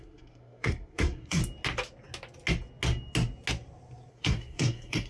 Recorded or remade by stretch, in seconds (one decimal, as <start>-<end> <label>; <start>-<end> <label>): 0.0-1.4 remade; 1.4-4.1 recorded; 4.1-5.1 remade